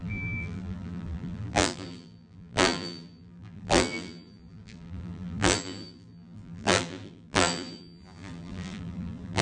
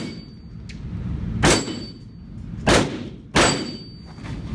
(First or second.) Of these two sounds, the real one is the second